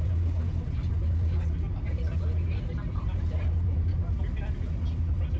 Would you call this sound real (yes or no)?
yes